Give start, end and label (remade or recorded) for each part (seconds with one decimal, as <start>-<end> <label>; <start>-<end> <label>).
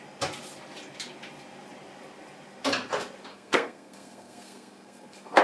0.0-3.3 recorded; 3.3-5.4 remade